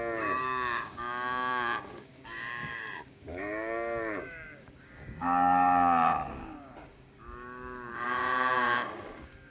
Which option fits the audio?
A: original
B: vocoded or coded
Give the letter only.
B